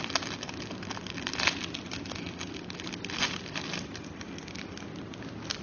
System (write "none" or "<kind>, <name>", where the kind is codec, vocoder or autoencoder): none